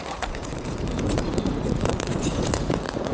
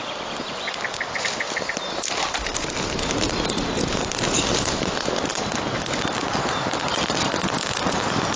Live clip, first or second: second